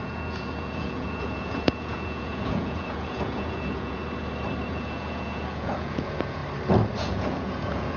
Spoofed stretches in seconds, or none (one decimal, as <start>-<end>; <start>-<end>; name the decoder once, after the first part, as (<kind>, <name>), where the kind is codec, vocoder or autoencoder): 0.0-4.0 (vocoder, Vocos); 4.7-6.4; 7.0-8.0